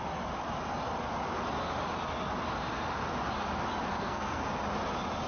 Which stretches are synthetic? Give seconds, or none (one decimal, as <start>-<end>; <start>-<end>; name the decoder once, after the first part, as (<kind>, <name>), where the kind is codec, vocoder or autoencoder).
3.9-4.5 (codec, SNAC)